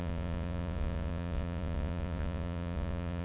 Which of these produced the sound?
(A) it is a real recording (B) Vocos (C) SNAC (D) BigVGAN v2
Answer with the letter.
B